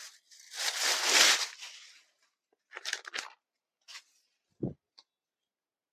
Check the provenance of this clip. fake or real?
real